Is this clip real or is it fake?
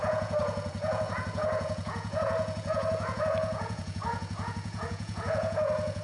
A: fake